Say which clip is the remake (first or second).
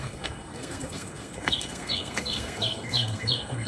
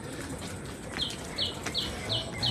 first